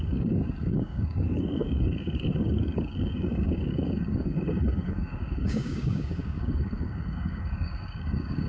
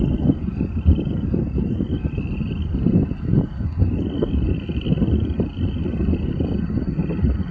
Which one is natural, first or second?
second